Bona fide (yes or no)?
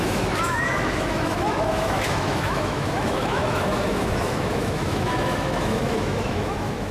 no